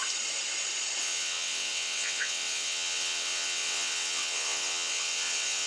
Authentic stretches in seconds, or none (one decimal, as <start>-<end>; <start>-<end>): 0.0-1.0